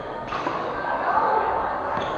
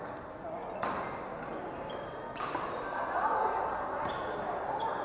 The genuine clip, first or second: second